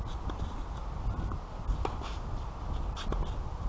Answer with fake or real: real